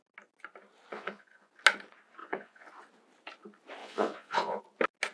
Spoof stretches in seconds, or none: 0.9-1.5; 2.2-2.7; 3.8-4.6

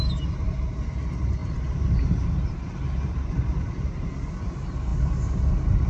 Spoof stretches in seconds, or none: 1.4-3.9

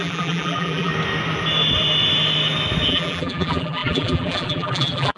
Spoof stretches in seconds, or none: 0.0-0.9; 2.9-5.2

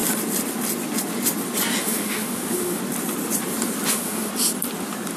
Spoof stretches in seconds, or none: 1.8-2.8; 3.9-4.3